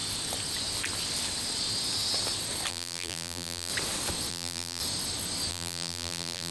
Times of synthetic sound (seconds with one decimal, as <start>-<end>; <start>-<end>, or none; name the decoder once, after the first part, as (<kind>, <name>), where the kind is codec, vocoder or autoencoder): 2.7-3.7 (vocoder, BigVGAN v2); 4.3-4.8; 5.5-6.5